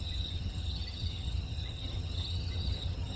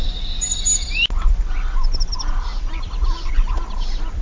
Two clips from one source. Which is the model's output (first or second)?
first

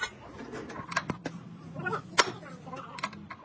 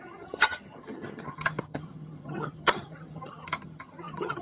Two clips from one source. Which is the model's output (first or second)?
second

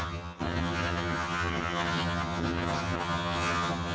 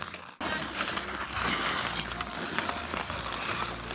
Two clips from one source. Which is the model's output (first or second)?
first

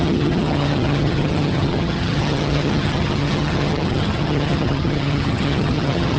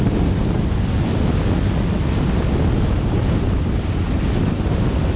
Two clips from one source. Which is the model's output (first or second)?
first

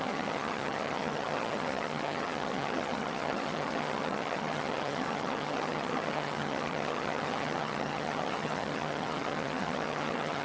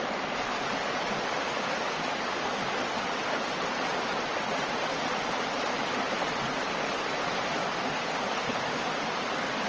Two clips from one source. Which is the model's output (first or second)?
first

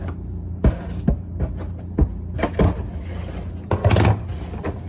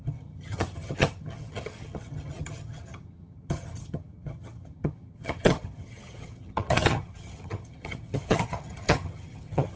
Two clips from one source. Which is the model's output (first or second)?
second